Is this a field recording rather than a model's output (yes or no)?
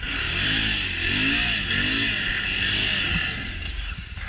yes